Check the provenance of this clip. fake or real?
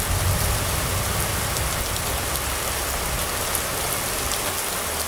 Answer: real